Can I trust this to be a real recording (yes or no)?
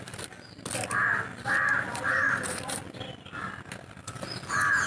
yes